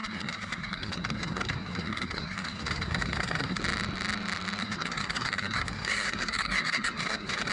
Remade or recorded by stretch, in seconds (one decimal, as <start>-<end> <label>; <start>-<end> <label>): 0.0-3.6 remade; 3.6-4.6 recorded; 4.6-7.5 remade